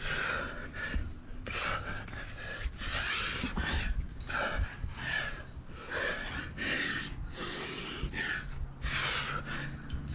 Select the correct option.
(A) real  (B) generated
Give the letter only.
A